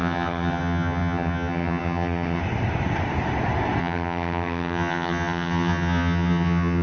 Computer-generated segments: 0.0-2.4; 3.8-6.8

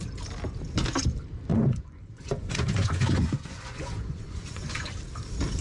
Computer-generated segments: 1.5-4.9